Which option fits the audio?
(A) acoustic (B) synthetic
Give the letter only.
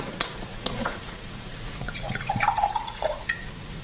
B